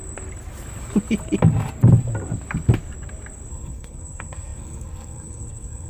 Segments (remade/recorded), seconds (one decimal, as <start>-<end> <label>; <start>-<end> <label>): 0.0-3.5 recorded; 3.5-5.9 remade